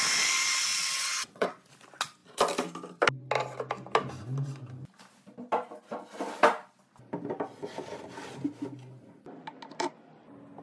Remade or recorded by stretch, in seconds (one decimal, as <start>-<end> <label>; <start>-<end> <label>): 0.0-0.7 recorded; 0.7-1.5 remade; 1.5-10.6 recorded